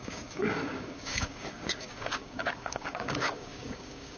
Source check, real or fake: fake